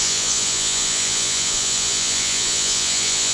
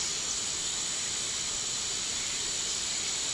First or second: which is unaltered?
second